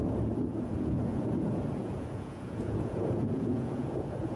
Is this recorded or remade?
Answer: remade